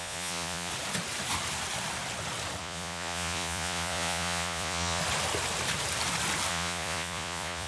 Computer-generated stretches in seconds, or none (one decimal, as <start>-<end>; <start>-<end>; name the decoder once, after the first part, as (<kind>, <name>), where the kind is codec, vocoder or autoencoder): 0.0-0.7 (vocoder, Vocos); 2.6-5.0; 6.5-7.7